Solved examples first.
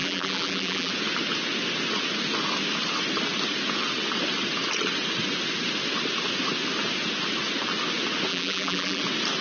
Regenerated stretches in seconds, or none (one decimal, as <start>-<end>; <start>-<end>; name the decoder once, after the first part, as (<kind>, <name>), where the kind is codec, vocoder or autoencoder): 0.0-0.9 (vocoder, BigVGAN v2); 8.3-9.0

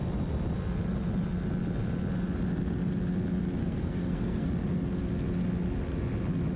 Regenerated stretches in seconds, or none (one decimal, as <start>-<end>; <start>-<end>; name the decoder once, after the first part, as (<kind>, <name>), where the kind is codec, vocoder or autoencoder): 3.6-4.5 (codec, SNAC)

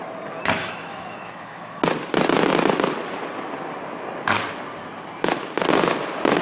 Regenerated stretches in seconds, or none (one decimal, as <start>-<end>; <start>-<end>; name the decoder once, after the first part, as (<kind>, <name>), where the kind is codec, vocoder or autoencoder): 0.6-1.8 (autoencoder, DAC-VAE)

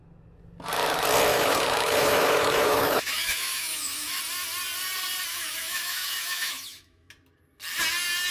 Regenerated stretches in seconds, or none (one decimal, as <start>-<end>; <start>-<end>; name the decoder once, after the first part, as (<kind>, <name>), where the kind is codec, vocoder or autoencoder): 1.3-4.2 (autoencoder, DAC-VAE); 5.3-7.1

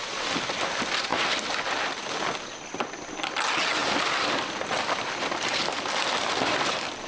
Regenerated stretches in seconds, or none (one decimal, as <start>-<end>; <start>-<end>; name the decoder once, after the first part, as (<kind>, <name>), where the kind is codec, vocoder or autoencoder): 3.8-7.1 (vocoder, BigVGAN v2)

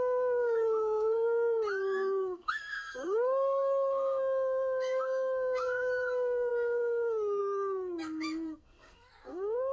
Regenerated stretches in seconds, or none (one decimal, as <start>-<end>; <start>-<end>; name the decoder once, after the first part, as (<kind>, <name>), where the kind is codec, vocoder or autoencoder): 0.0-9.7 (codec, SNAC)